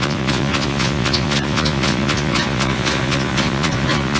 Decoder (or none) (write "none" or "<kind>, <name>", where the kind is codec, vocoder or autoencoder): vocoder, Vocos